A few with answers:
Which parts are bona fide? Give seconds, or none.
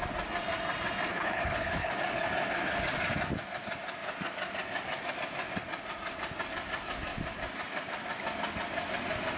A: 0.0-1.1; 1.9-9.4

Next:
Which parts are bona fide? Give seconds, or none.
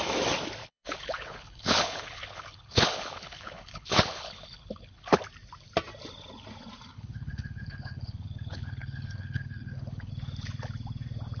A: 0.0-0.6; 5.2-6.9; 10.1-11.4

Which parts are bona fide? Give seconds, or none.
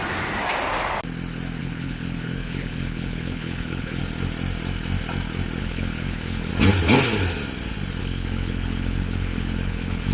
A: 0.0-1.6; 4.0-5.6; 6.5-8.0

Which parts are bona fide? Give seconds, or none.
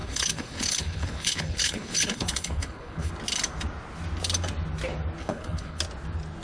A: 3.1-5.2; 5.8-6.4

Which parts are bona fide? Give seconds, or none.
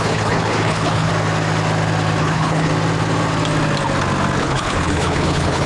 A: 1.1-2.2; 2.7-4.4